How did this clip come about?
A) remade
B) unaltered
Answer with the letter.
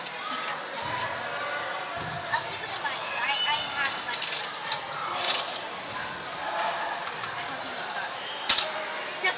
B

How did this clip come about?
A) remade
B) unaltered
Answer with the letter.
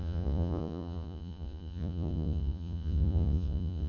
A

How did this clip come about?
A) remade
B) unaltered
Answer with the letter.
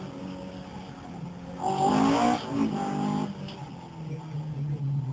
B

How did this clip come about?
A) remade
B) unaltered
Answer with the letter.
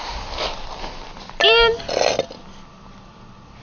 B